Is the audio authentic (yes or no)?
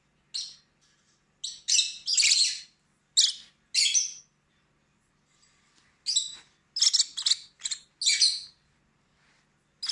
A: yes